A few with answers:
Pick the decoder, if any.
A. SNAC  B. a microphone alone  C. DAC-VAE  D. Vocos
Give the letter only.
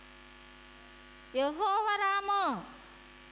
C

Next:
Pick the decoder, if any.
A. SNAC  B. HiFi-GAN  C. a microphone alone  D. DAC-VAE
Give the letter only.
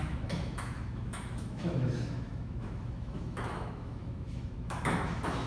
D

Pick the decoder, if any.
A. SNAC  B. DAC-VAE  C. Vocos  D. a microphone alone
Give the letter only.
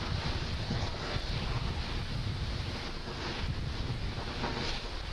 D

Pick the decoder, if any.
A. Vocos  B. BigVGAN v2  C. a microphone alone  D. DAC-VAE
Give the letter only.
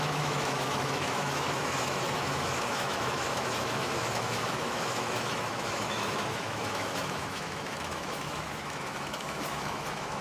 D